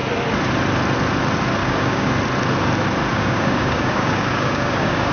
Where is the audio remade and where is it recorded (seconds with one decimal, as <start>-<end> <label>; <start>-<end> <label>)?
0.0-1.6 recorded; 1.6-2.1 remade; 2.1-3.1 recorded; 3.1-5.1 remade